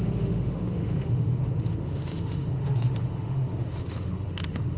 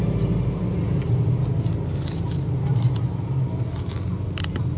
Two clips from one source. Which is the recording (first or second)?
second